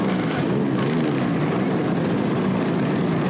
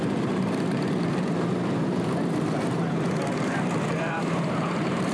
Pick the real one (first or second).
first